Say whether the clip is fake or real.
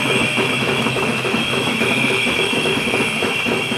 fake